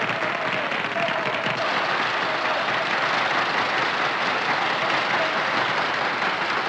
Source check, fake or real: real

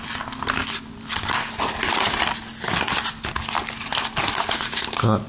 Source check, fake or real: real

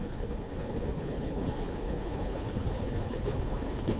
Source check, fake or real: fake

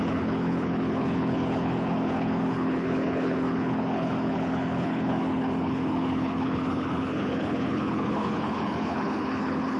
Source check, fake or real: fake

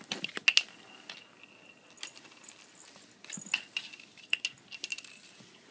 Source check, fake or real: real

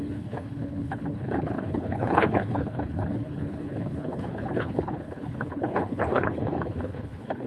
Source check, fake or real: fake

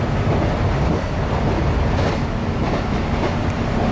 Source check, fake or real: real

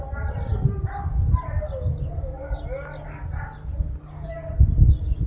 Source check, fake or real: real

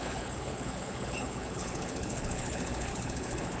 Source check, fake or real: fake